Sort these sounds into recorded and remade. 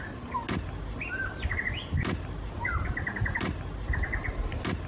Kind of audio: recorded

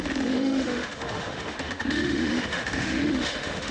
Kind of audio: remade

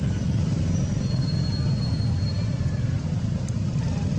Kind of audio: recorded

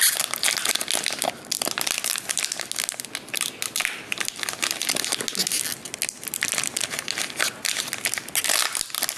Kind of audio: recorded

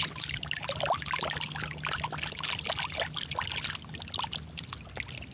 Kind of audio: recorded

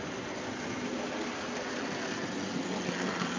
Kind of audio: recorded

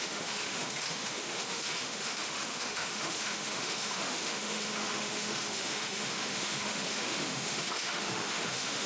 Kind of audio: remade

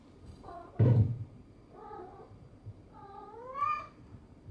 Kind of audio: remade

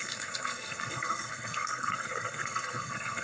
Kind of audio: remade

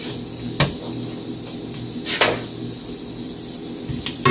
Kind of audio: recorded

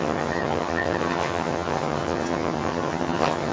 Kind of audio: remade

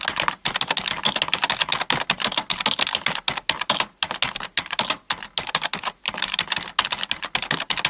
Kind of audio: recorded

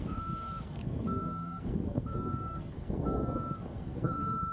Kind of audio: remade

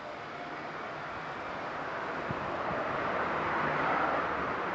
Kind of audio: recorded